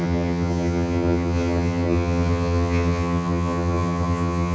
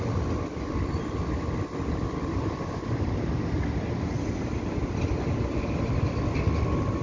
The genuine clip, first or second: second